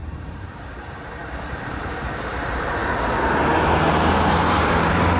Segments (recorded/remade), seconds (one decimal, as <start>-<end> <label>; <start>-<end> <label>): 0.0-2.8 remade; 2.8-4.4 recorded; 4.4-5.2 remade